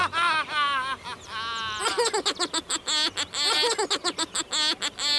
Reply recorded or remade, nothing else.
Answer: recorded